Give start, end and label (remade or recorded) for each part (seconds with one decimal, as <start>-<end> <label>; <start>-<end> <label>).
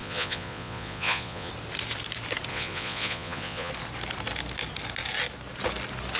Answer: 0.0-1.5 remade; 1.5-2.5 recorded; 2.5-3.7 remade; 3.7-6.2 recorded